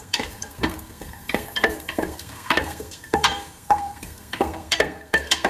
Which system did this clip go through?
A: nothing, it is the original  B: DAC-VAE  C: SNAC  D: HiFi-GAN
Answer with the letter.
C